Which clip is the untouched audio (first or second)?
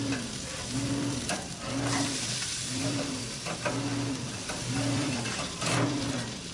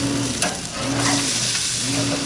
second